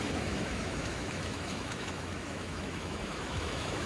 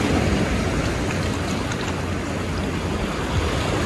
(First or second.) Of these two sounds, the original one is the second